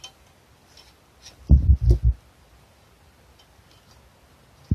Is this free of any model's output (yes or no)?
yes